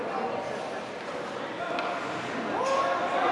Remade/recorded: recorded